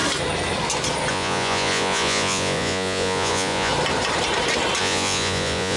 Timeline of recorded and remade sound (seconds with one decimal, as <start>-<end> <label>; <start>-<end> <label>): 0.0-1.1 recorded; 1.1-3.7 remade; 3.7-4.8 recorded; 4.8-5.8 remade